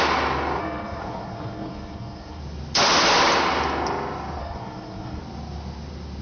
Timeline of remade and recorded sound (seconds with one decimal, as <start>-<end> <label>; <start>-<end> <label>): 0.0-0.6 recorded; 0.6-2.4 remade; 2.4-4.4 recorded; 4.4-5.2 remade; 5.2-6.2 recorded